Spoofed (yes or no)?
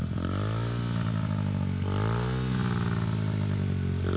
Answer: no